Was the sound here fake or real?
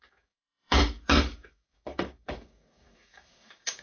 fake